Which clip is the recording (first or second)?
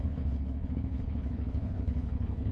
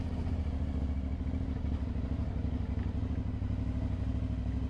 second